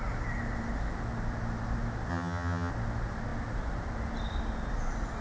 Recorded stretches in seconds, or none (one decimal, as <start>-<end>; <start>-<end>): 0.0-2.1; 2.7-5.2